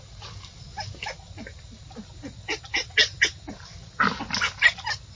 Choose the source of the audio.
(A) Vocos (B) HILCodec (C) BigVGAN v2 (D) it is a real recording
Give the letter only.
D